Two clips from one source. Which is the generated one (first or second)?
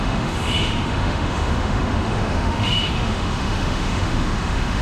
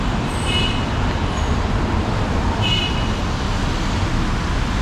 first